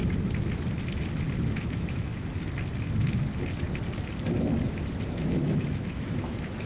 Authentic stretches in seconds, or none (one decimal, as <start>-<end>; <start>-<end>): 0.0-1.5; 2.1-5.1